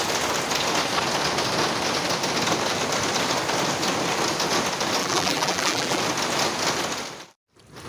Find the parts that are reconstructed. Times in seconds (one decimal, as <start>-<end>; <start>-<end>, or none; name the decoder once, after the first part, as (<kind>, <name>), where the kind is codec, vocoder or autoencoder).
5.0-6.0 (vocoder, BigVGAN v2)